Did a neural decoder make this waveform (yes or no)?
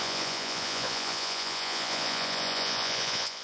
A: yes